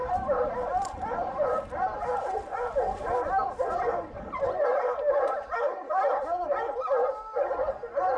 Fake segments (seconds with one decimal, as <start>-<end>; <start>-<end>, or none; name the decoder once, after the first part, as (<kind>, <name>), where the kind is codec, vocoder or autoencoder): none